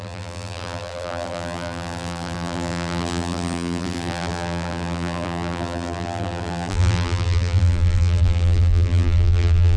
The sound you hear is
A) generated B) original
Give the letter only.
A